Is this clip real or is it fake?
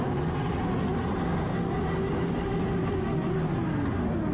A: real